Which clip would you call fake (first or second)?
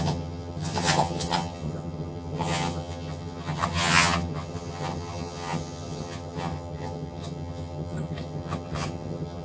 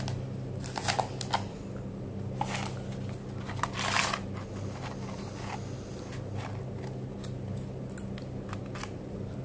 first